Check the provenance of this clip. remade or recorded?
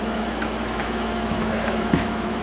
remade